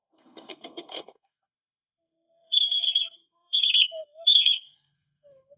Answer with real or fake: fake